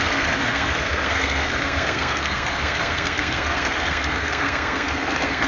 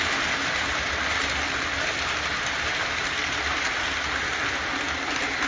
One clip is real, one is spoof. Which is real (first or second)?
second